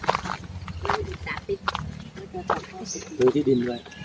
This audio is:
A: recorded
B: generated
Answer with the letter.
A